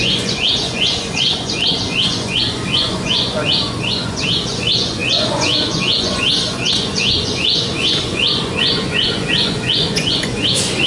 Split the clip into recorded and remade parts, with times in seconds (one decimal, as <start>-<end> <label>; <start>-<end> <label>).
0.0-10.9 remade